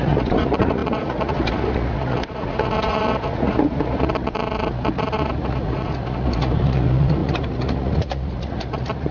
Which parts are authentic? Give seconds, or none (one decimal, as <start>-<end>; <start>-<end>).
none